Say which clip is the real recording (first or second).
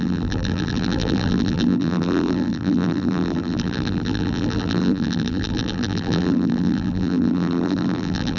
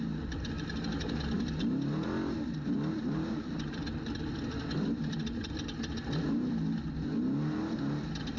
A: second